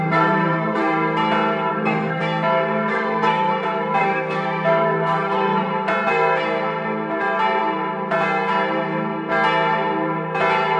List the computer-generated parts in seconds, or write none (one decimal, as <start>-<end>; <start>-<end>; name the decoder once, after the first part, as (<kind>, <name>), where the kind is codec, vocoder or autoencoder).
0.0-0.8 (codec, SNAC); 1.7-2.2; 2.9-3.5; 4.0-5.7